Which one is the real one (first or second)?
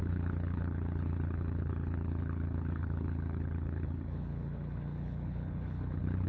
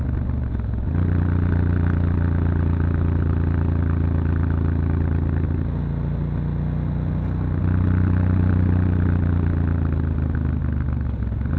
second